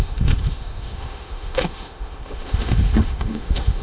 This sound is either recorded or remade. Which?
remade